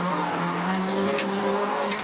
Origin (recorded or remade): remade